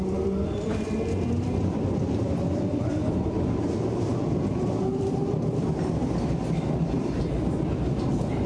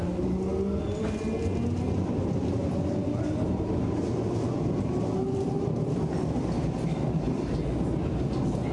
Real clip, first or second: second